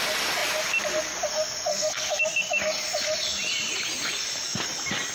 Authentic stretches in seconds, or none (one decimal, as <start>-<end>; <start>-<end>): 0.0-1.7; 2.2-5.1